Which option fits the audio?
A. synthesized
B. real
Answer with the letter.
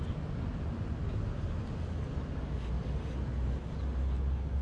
B